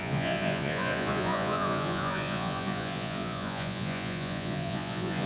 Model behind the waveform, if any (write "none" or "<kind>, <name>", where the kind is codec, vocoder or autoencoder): vocoder, Vocos